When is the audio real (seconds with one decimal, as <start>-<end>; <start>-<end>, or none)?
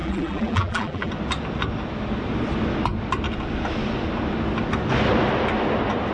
1.1-6.1